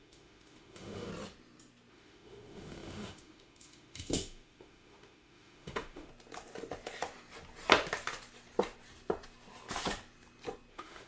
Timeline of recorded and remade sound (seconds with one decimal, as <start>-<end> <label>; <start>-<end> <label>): 0.0-1.1 remade; 1.1-1.9 recorded; 1.9-6.1 remade; 6.1-10.7 recorded; 10.7-11.1 remade